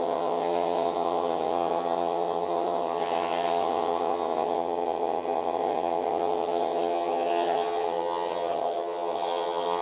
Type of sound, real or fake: fake